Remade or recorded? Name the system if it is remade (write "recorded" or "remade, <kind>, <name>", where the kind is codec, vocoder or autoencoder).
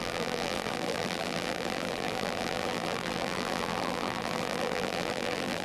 remade, vocoder, BigVGAN v2